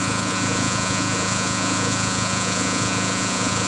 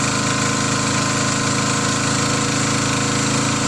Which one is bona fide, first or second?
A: second